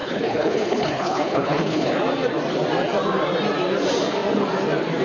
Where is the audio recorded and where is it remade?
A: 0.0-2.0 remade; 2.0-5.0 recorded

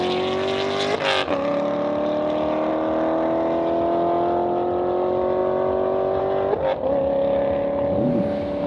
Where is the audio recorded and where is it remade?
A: 0.0-8.7 recorded

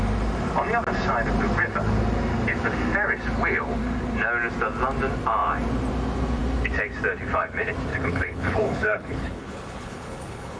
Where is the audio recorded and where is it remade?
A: 0.0-7.9 recorded; 7.9-10.6 remade

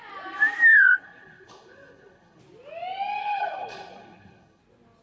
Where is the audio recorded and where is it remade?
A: 0.0-0.7 recorded; 0.7-2.4 remade; 2.4-3.2 recorded; 3.2-4.6 remade; 4.6-5.0 recorded

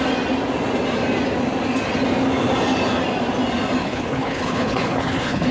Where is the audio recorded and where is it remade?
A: 0.0-3.8 recorded; 3.8-5.5 remade

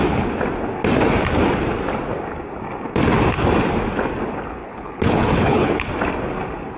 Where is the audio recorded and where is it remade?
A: 0.0-4.6 recorded; 4.6-5.9 remade; 5.9-6.8 recorded

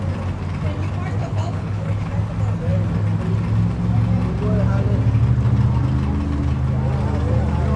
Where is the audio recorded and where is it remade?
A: 0.0-1.2 recorded; 1.2-2.1 remade; 2.1-7.8 recorded